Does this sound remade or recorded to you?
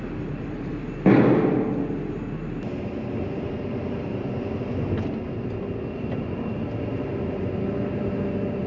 recorded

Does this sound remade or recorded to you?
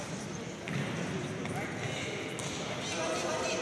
recorded